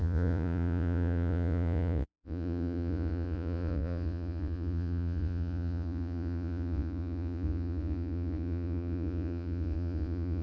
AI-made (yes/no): yes